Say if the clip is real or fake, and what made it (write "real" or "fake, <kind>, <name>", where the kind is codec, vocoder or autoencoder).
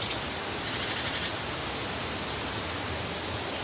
real